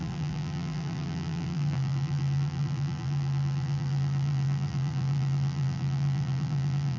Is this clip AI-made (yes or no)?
yes